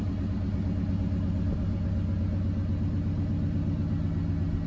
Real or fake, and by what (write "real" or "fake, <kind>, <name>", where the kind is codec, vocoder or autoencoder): real